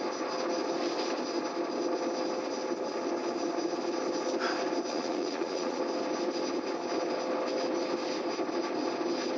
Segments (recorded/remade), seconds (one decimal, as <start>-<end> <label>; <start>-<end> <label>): 0.0-4.9 recorded; 4.9-5.8 remade; 5.8-9.4 recorded